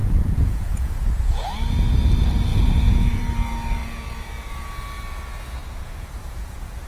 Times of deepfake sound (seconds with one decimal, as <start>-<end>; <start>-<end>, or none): 0.0-1.5; 2.5-3.2; 5.6-6.9